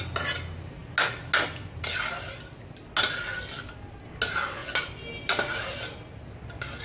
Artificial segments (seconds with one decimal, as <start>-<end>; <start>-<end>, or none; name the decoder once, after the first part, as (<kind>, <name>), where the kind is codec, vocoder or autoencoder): none